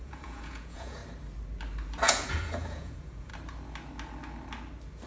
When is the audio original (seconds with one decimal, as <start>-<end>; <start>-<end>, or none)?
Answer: 1.0-2.0; 3.3-5.1